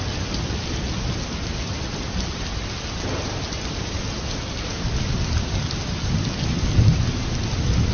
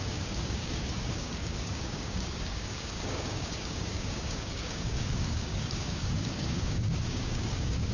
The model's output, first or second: second